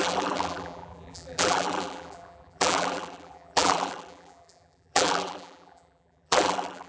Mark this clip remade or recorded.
remade